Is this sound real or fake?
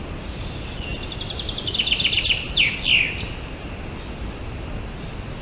real